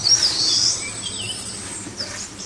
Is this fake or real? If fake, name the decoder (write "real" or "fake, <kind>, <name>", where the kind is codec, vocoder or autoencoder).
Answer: fake, vocoder, BigVGAN v2